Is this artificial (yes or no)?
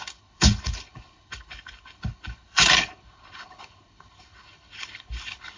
yes